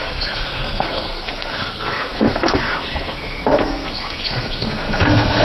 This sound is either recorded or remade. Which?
remade